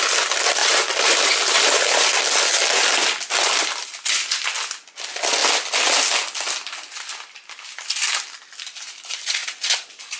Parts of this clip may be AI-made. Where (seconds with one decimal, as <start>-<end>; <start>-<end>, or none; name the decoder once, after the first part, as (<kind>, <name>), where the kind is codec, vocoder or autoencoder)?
0.6-2.1 (vocoder, BigVGAN v2)

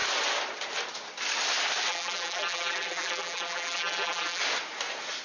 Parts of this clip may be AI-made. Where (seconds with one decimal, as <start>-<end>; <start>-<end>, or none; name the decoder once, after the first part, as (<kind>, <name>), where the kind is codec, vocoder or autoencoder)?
1.9-4.4 (vocoder, BigVGAN v2)

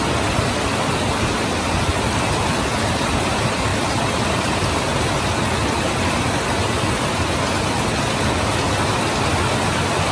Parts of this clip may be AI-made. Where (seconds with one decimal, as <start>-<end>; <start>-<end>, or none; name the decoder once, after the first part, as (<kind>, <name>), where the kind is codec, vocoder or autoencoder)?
3.7-4.6 (vocoder, BigVGAN v2)

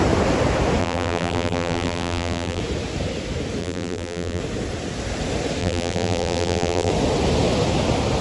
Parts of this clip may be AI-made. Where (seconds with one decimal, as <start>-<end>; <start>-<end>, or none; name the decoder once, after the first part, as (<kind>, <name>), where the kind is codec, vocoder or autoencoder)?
0.8-2.6 (vocoder, BigVGAN v2); 3.6-4.4; 5.6-6.9